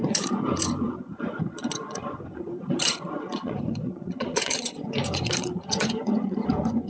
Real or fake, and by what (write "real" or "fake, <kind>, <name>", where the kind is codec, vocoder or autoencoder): fake, vocoder, Vocos